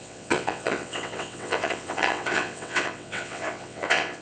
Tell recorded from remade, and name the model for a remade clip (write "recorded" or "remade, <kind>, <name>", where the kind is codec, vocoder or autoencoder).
remade, vocoder, WaveNeXt